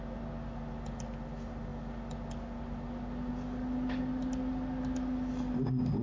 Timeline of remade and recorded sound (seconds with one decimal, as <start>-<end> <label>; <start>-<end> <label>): 0.0-6.0 recorded